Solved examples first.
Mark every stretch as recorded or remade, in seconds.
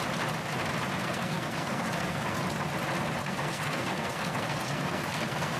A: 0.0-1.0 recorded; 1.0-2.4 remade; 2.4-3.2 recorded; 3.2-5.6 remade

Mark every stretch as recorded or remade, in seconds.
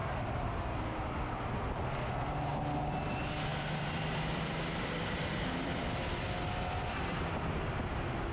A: 0.0-0.6 remade; 0.6-3.5 recorded; 3.5-5.9 remade; 5.9-8.3 recorded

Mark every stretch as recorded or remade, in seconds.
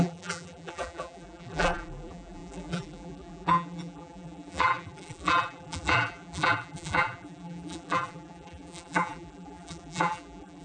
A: 0.0-10.6 remade